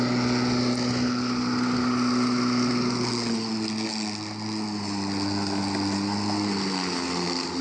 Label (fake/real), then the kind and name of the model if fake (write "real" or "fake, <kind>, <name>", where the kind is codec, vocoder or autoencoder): real